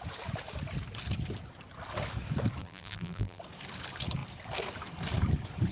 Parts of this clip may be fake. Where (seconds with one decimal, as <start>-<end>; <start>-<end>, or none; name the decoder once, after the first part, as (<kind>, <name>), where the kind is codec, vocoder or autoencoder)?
2.6-3.4 (vocoder, BigVGAN v2)